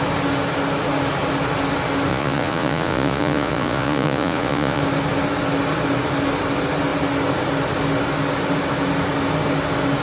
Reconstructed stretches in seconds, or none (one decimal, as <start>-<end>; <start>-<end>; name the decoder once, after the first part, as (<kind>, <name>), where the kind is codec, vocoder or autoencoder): 2.1-4.8 (vocoder, Vocos)